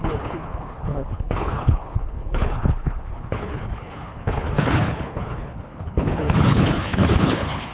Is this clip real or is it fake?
fake